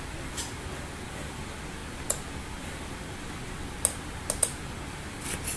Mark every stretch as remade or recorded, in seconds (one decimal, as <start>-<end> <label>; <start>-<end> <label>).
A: 0.0-5.6 recorded

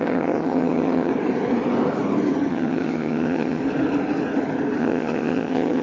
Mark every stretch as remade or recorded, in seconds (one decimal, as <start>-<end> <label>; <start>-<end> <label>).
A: 0.0-1.1 remade; 1.1-2.5 recorded; 2.5-3.6 remade; 3.6-4.8 recorded; 4.8-5.8 remade

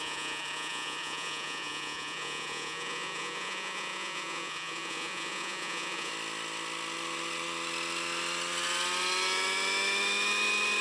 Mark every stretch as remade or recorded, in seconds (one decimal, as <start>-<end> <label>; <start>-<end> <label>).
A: 0.0-6.1 remade; 6.1-10.8 recorded

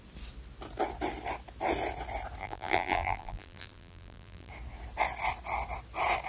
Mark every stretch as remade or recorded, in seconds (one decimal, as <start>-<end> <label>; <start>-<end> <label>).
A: 0.0-2.4 recorded; 2.4-4.5 remade; 4.5-6.3 recorded

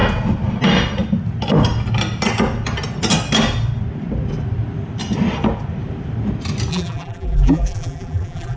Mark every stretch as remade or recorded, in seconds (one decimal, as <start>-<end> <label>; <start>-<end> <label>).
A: 0.0-6.7 recorded; 6.7-8.6 remade

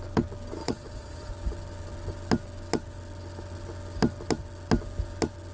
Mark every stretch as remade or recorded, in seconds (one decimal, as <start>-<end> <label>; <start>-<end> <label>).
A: 0.0-0.6 recorded; 0.6-1.3 remade; 1.3-5.5 recorded

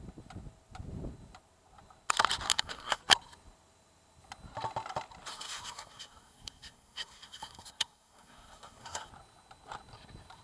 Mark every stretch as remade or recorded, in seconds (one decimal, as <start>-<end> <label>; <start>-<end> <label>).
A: 0.0-2.5 recorded; 2.5-3.0 remade; 3.0-5.3 recorded; 5.3-9.1 remade; 9.1-10.4 recorded